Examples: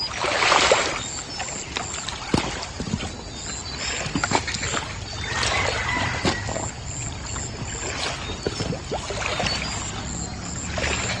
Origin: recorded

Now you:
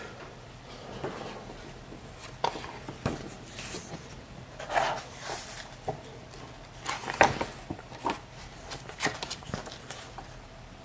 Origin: recorded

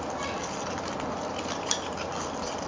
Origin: recorded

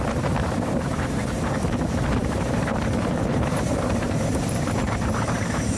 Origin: remade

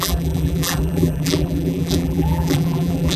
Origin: remade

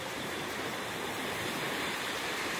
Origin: remade